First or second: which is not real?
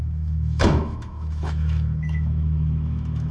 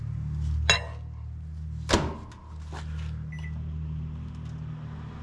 first